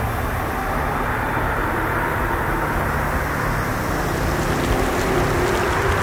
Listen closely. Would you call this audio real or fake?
real